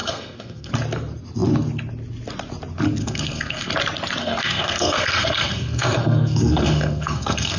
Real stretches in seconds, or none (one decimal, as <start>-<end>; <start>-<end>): 0.7-3.0; 3.7-4.2